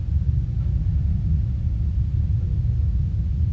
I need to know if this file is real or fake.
real